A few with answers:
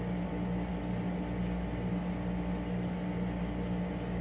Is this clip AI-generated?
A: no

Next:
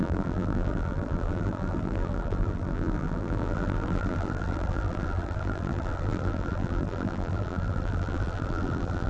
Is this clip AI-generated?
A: yes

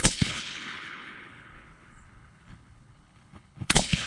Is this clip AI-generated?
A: yes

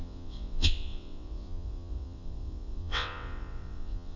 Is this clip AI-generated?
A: yes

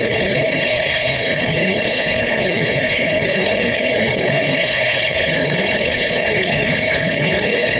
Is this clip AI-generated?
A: yes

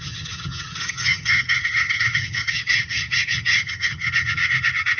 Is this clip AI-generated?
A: yes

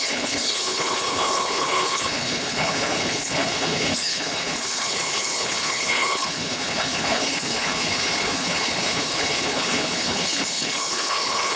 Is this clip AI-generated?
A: yes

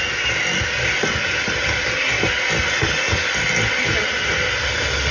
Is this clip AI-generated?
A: no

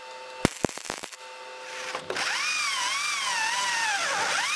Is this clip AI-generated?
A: no